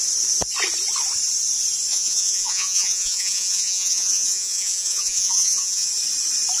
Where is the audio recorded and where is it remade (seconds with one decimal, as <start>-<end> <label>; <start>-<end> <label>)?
0.0-1.9 recorded; 1.9-5.9 remade; 5.9-6.6 recorded